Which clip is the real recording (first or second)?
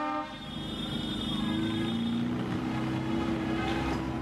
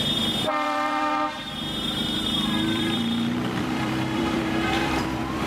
first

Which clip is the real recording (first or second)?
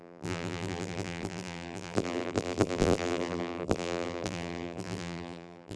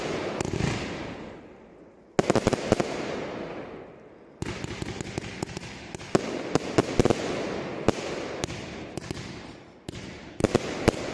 second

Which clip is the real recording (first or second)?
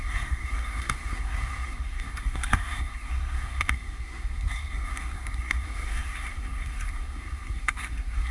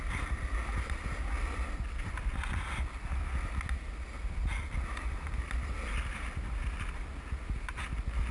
second